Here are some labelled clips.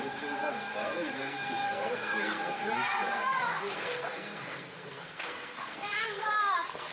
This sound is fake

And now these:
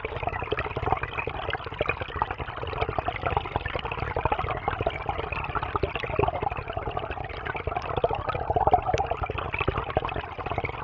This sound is real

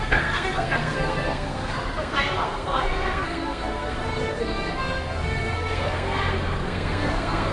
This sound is fake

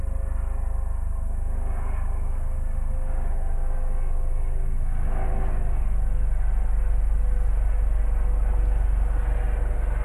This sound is real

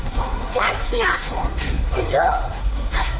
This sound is fake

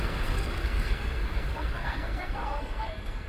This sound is fake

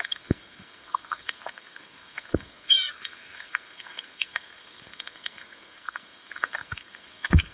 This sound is fake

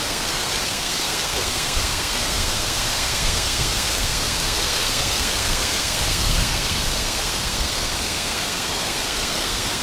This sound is fake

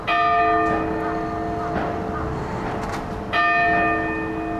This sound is real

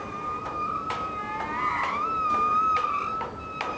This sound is real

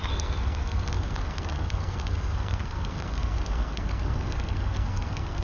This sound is fake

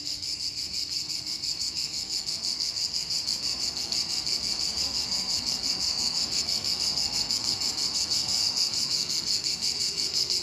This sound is fake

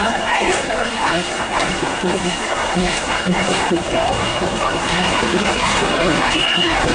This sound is fake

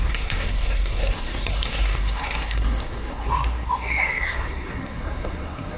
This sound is fake